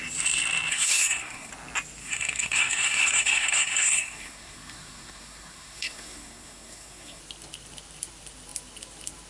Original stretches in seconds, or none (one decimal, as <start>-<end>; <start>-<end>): 0.0-0.7; 1.5-2.0; 7.2-9.3